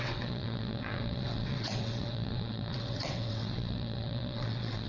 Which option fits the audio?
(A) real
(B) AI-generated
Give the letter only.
B